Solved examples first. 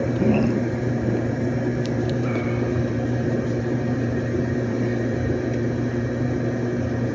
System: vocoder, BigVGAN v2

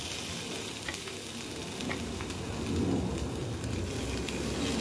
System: none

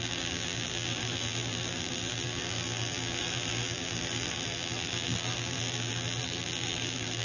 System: vocoder, BigVGAN v2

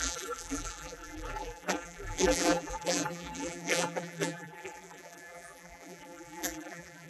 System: vocoder, BigVGAN v2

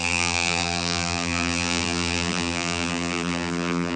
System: vocoder, BigVGAN v2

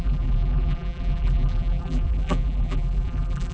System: vocoder, BigVGAN v2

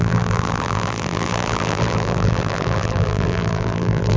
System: vocoder, BigVGAN v2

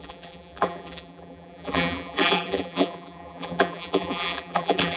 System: vocoder, BigVGAN v2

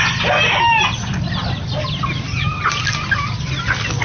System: none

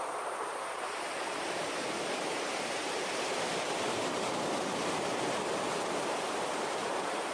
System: vocoder, BigVGAN v2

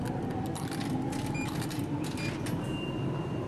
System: none